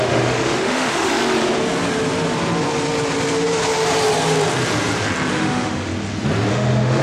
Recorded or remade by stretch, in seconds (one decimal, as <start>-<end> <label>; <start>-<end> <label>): 0.0-1.2 remade; 1.2-5.3 recorded; 5.3-5.9 remade; 5.9-6.5 recorded; 6.5-7.0 remade